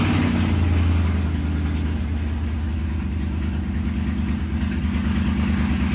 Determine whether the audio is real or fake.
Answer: real